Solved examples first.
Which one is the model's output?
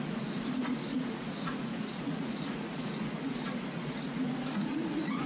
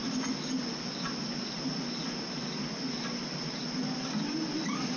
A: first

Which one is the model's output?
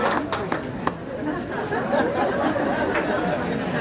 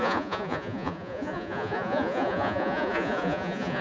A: second